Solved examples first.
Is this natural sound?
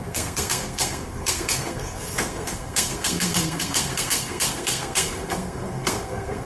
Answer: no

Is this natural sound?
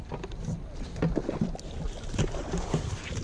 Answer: yes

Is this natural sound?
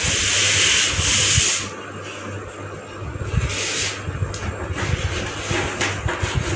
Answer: yes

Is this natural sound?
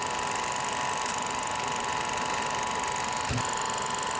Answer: yes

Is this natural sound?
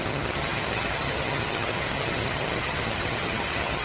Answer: no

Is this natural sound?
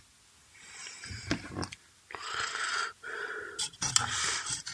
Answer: yes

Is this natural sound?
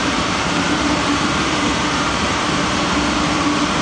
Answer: no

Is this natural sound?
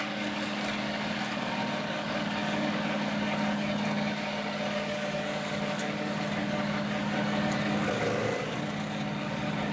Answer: no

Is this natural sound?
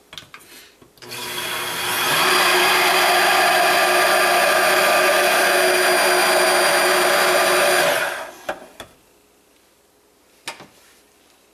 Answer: yes